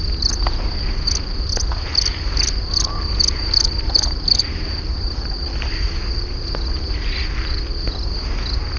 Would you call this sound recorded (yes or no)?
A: yes